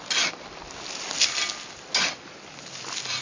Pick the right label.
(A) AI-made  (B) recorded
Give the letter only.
B